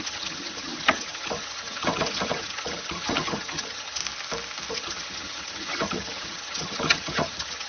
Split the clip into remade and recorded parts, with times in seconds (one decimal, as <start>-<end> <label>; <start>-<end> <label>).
0.0-4.0 remade; 4.0-4.7 recorded; 4.7-7.7 remade